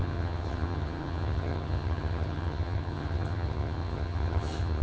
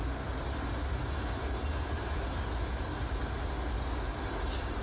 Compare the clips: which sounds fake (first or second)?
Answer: first